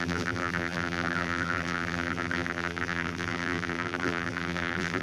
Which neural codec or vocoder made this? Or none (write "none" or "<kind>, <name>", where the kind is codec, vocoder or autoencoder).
vocoder, BigVGAN v2